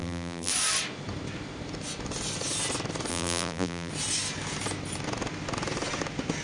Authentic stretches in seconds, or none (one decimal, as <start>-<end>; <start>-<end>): 0.5-3.1; 3.9-6.4